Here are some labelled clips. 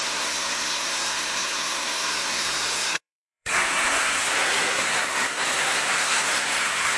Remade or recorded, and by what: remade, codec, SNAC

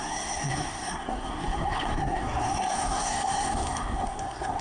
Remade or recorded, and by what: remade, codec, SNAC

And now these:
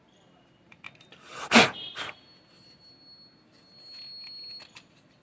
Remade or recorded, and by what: recorded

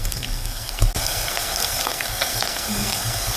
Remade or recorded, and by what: remade, codec, SNAC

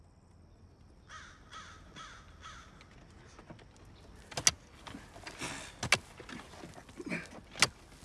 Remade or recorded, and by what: recorded